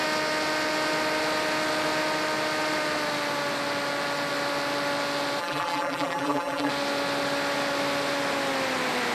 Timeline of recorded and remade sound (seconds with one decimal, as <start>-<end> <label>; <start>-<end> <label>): 0.0-5.4 recorded; 5.4-6.7 remade; 6.7-9.1 recorded